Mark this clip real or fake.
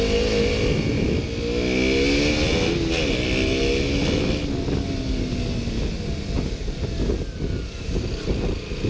real